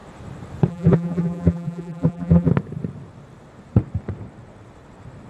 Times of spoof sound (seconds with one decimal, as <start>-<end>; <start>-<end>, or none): 0.7-2.5